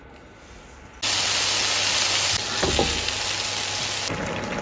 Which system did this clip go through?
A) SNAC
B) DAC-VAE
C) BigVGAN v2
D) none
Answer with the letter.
D